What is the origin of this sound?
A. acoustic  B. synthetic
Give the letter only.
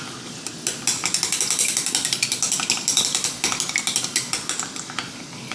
A